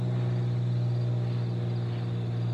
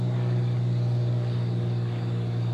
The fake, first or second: second